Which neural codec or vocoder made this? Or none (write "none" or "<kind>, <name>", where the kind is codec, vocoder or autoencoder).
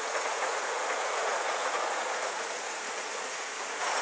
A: vocoder, Vocos